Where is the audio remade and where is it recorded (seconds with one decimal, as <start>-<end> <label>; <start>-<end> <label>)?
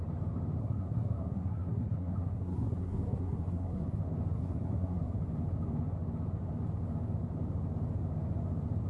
0.0-0.6 recorded; 0.6-4.0 remade; 4.0-4.4 recorded; 4.4-5.2 remade; 5.2-8.9 recorded